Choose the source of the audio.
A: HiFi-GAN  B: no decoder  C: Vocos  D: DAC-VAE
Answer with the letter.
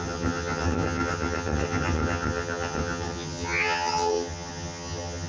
A